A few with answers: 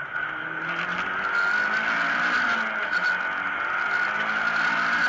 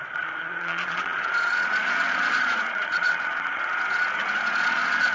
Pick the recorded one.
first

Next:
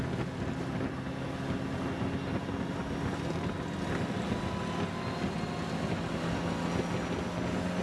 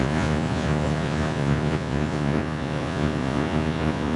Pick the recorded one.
first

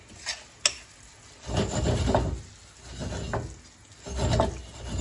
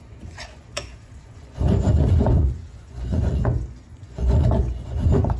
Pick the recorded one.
first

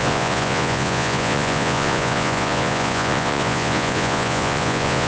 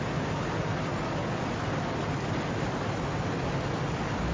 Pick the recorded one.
second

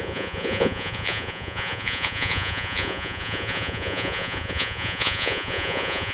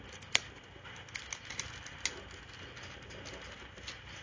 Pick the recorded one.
second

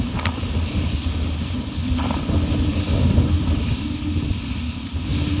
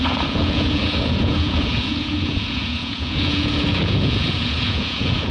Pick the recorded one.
first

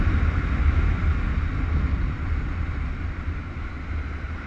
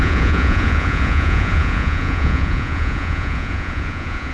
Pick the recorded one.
first